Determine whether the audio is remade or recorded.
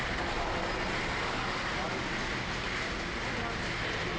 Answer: recorded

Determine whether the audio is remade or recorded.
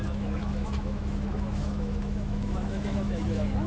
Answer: remade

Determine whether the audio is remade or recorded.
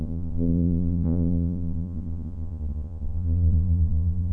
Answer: remade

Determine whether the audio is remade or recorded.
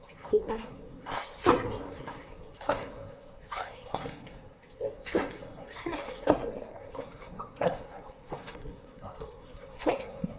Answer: remade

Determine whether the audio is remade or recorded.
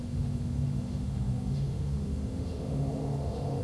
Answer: remade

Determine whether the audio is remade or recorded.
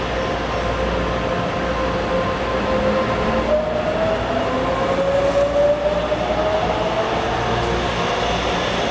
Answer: recorded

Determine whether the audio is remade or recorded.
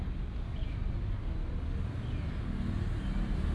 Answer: recorded